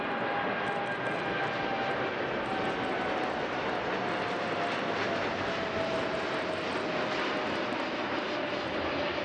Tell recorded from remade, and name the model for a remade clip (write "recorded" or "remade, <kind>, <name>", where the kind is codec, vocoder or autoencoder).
recorded